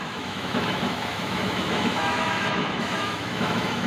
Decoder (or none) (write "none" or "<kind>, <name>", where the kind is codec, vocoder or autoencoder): autoencoder, DAC-VAE